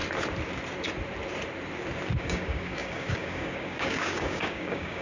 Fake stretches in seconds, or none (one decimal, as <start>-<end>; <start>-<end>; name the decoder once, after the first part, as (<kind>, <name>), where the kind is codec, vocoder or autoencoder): 2.2-5.0 (codec, DAC)